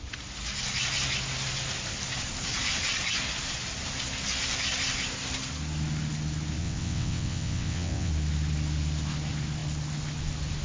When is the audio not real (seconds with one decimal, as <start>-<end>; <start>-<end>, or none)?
6.6-8.1